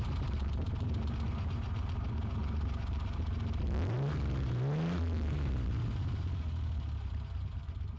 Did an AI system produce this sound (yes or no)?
yes